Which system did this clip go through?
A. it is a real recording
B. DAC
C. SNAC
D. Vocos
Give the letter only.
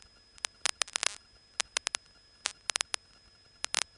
A